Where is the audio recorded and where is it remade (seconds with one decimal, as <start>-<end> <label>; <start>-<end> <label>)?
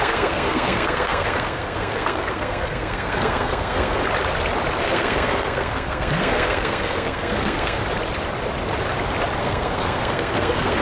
0.0-4.0 remade; 4.0-4.8 recorded; 4.8-7.8 remade; 7.8-9.4 recorded; 9.4-10.8 remade